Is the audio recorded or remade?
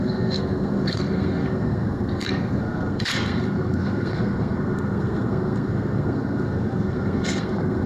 remade